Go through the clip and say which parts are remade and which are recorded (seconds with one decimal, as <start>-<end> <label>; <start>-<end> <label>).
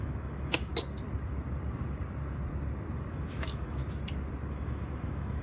0.0-0.7 remade; 0.7-3.1 recorded; 3.1-3.8 remade; 3.8-4.5 recorded; 4.5-5.4 remade